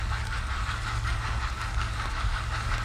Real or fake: fake